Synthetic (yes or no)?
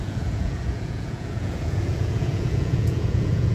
yes